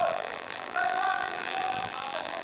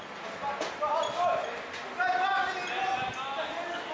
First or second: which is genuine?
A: second